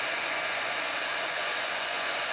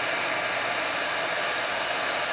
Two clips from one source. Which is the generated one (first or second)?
first